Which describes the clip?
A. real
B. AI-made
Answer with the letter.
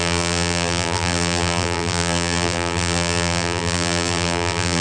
B